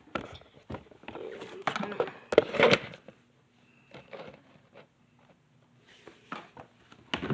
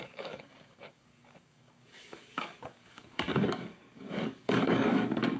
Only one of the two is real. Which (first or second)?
first